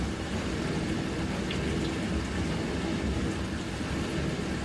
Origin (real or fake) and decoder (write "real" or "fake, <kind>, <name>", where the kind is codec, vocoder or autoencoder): real